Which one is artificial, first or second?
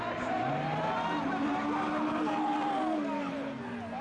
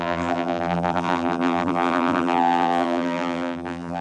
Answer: second